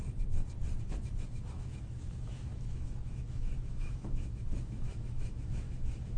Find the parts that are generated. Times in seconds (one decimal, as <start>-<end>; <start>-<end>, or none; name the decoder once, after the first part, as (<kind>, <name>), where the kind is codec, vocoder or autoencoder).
0.8-6.2 (autoencoder, DAC-VAE)

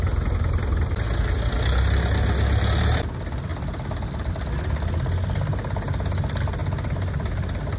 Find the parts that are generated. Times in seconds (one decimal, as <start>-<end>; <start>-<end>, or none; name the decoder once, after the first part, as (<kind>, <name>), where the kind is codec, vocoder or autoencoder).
none

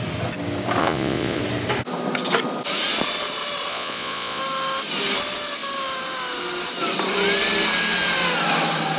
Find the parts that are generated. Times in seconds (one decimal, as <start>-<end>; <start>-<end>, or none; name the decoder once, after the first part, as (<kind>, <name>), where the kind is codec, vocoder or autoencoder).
0.8-1.4 (vocoder, Vocos); 3.7-4.4